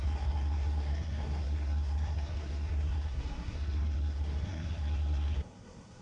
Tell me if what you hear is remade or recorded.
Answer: remade